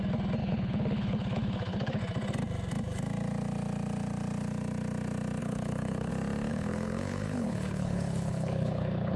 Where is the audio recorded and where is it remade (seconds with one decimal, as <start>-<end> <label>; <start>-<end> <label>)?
0.0-0.4 recorded; 0.4-2.0 remade; 2.0-5.4 recorded; 5.4-6.1 remade; 6.1-6.5 recorded; 6.5-9.2 remade